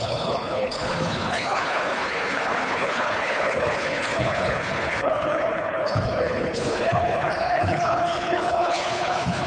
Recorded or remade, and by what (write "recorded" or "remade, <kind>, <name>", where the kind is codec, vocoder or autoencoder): remade, codec, HILCodec